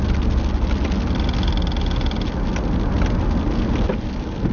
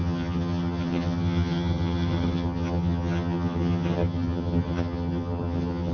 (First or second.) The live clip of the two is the first